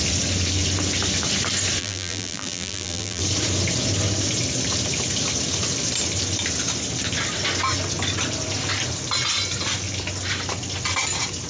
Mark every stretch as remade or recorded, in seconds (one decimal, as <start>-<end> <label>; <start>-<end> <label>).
0.0-1.8 recorded; 1.8-3.2 remade; 3.2-11.5 recorded